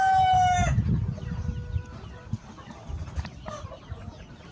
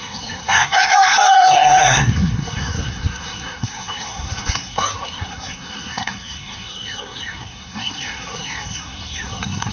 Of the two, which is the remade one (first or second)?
second